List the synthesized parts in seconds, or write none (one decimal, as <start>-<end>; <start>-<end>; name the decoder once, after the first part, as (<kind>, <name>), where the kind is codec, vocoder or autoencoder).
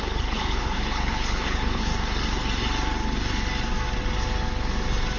0.0-1.9 (codec, HILCodec)